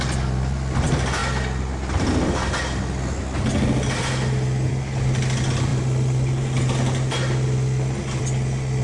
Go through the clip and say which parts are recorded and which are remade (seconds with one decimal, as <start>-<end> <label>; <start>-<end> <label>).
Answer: 0.0-8.8 recorded